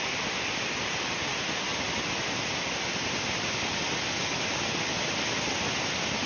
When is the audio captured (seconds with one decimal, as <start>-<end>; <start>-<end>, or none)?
0.0-6.3